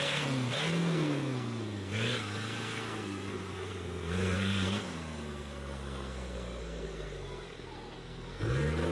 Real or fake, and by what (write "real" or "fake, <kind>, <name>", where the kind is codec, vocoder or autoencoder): fake, codec, SNAC